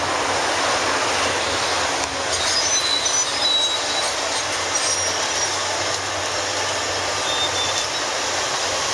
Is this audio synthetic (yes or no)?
no